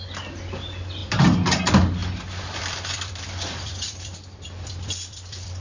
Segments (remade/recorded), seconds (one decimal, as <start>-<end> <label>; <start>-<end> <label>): 0.0-1.0 recorded; 1.0-1.6 remade; 1.6-2.0 recorded; 2.0-5.6 remade